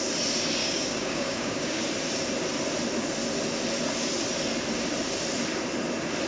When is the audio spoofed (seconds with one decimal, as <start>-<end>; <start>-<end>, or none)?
0.6-1.8